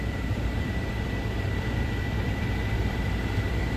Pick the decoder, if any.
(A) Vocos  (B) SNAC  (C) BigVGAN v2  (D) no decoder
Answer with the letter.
C